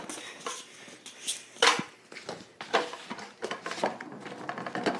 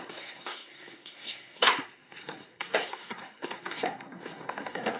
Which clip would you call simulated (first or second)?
second